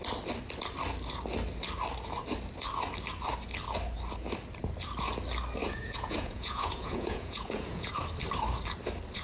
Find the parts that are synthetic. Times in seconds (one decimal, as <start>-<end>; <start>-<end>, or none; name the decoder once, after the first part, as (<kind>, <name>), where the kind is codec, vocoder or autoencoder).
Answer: 5.6-7.9 (vocoder, Vocos)